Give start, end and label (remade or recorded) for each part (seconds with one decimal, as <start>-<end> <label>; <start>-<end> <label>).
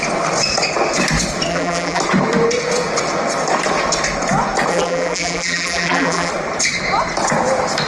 0.0-1.5 recorded; 1.5-2.0 remade; 2.0-4.7 recorded; 4.7-6.3 remade; 6.3-7.9 recorded